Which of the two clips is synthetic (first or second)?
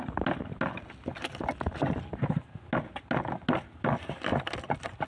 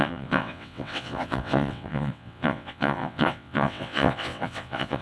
second